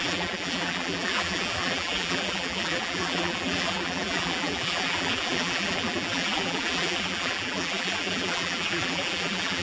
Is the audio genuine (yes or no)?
no